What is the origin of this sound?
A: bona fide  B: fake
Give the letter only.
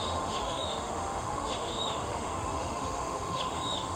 B